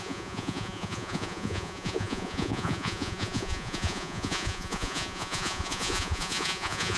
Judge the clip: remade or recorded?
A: remade